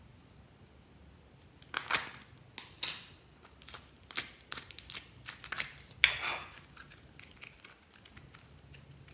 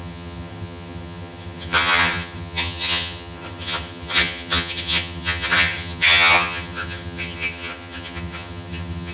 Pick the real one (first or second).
first